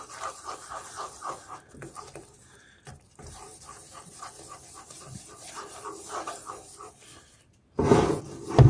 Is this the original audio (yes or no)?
yes